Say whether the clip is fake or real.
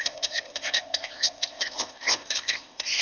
fake